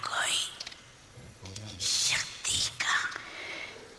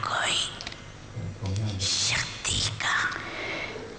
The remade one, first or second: first